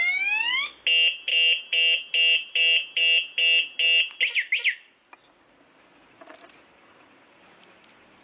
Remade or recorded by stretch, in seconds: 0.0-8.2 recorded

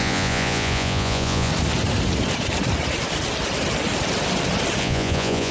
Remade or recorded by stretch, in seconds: 0.0-1.5 remade; 1.5-4.8 recorded; 4.8-5.5 remade

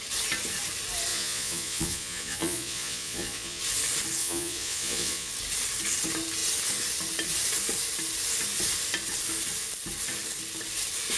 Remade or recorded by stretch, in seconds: 0.0-1.1 recorded; 1.1-3.6 remade; 3.6-4.2 recorded; 4.2-5.3 remade; 5.3-11.2 recorded